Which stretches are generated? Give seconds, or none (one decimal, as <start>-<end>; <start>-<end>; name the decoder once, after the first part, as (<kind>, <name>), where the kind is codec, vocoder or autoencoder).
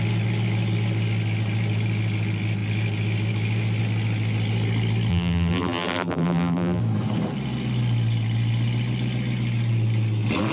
5.1-6.8 (vocoder, BigVGAN v2)